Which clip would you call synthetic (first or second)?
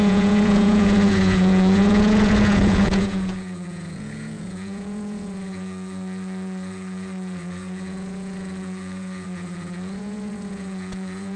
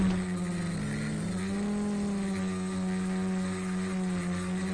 first